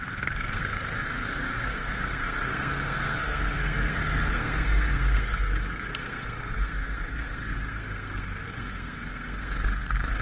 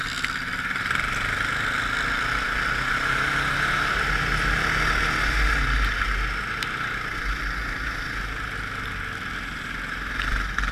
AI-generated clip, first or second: first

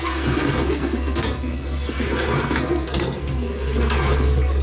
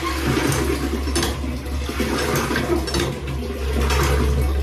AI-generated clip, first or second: first